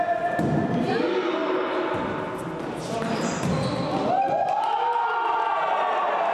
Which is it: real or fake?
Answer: real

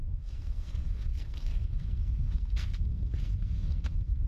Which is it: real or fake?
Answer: fake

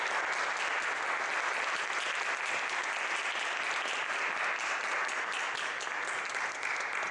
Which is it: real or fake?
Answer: real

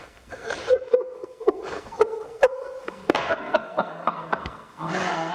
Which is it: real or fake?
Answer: fake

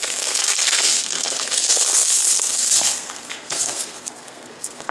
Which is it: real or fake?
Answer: fake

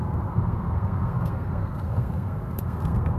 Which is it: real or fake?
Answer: fake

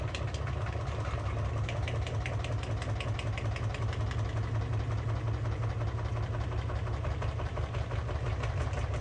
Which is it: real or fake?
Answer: real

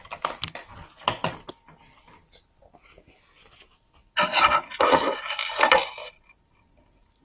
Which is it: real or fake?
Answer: real